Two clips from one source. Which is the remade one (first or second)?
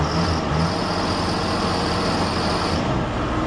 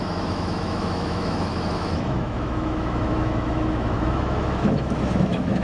second